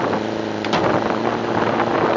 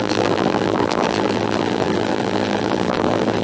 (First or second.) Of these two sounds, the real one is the first